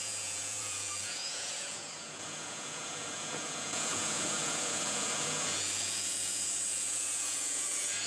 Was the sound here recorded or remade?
remade